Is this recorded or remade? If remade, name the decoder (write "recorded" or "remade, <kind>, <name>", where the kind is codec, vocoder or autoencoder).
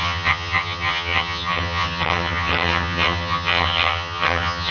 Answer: remade, vocoder, HiFi-GAN